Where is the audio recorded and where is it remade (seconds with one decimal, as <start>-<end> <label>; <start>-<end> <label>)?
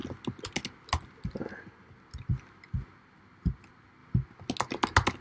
0.0-5.2 recorded